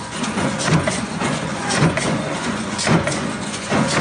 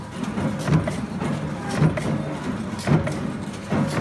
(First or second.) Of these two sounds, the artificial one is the first